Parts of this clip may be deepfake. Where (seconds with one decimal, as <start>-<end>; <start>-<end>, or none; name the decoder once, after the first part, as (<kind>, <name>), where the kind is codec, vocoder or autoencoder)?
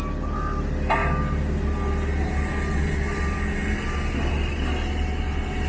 none